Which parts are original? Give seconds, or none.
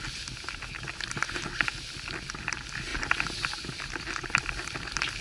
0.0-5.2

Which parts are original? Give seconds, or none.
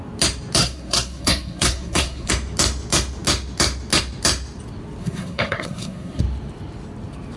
0.0-0.6; 2.3-5.0; 6.2-7.4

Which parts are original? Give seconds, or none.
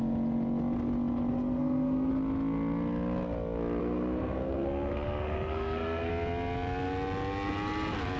0.0-1.3; 2.1-3.8; 6.1-8.2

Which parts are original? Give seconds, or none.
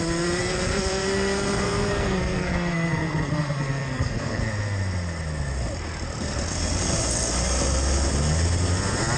0.0-0.4; 4.4-9.2